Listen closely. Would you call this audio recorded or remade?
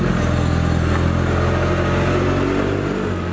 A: recorded